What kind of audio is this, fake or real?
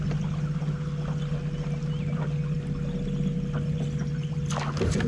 real